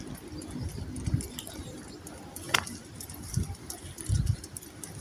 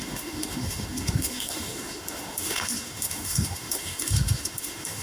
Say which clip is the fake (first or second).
second